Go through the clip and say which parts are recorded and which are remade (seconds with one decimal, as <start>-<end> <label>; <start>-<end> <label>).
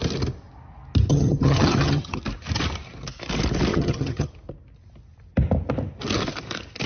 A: 0.0-1.1 recorded; 1.1-2.2 remade; 2.2-3.7 recorded; 3.7-4.3 remade; 4.3-6.9 recorded